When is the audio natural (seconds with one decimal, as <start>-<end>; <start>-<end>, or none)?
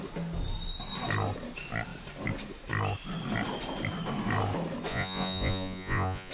0.0-4.9